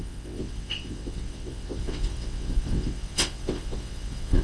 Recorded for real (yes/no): no